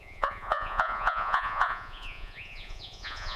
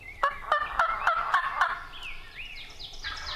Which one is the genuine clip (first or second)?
second